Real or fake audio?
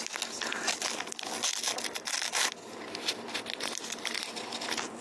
real